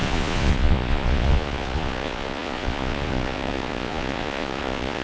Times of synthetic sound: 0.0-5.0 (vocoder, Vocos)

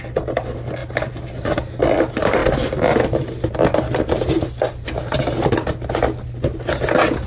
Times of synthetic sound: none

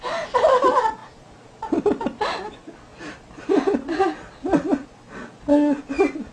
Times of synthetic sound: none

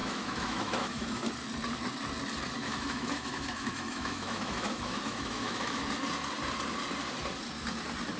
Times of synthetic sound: 0.0-1.3 (autoencoder, DAC-VAE); 2.6-5.9

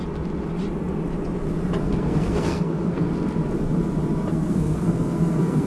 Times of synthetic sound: 1.8-3.1 (codec, SNAC); 4.3-5.7

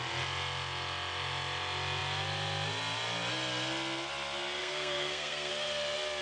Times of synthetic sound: 4.6-5.5 (codec, SNAC)

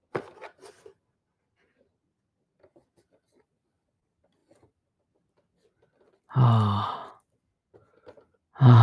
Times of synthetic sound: none

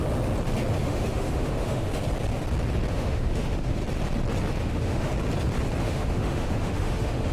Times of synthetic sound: 0.8-1.9 (autoencoder, DAC-VAE); 2.9-3.8; 4.6-5.1; 5.8-7.3